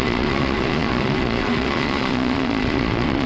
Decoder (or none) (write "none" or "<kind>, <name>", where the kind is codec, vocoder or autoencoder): vocoder, Vocos